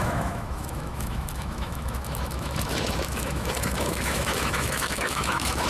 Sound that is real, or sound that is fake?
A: fake